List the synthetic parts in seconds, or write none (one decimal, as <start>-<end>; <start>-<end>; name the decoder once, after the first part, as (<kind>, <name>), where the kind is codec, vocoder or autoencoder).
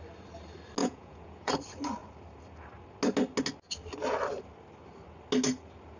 0.8-1.5 (vocoder, Vocos)